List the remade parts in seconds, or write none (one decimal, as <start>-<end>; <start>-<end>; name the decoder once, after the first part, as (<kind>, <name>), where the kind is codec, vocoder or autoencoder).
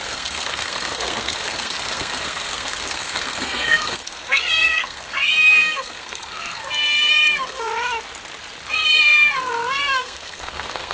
0.0-7.7 (codec, SNAC); 8.7-10.9